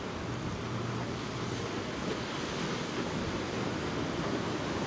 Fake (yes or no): no